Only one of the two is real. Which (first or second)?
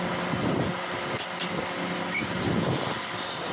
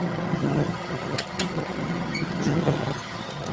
first